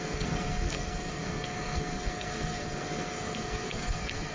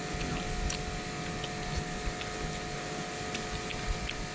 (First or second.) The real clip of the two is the second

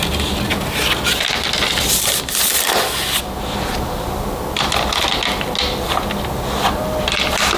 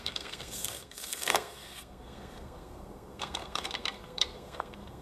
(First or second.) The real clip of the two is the first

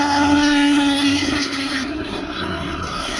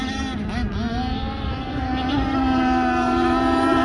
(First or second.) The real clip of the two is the second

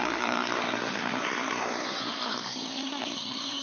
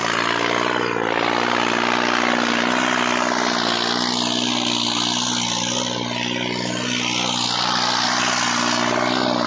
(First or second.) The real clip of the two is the second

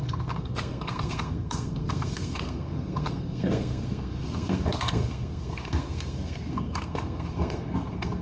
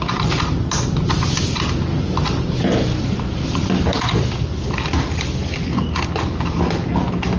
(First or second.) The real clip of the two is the second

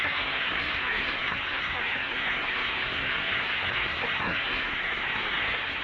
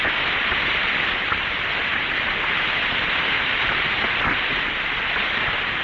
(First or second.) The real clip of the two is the second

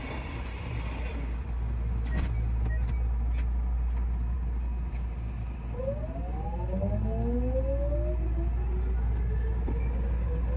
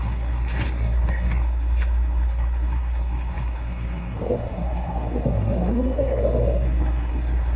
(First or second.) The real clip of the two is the first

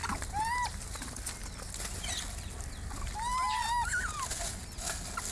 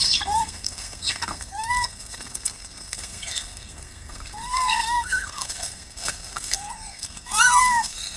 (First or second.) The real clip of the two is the first